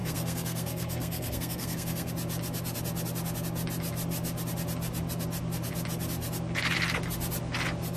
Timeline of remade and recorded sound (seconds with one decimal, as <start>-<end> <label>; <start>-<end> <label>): 0.0-2.1 remade; 2.1-8.0 recorded